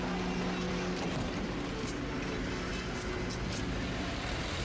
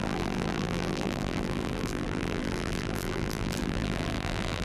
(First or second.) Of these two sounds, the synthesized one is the second